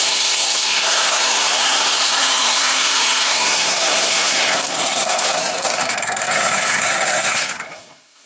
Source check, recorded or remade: remade